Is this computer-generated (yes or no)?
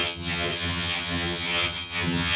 yes